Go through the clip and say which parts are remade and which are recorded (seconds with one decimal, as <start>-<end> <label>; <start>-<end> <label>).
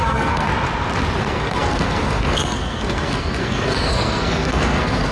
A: 0.0-0.5 remade; 0.5-1.2 recorded; 1.2-5.1 remade